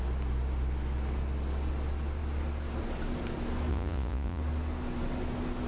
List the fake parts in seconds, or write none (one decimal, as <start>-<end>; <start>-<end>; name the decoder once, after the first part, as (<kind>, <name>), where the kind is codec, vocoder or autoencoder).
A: 3.7-4.4 (vocoder, Vocos)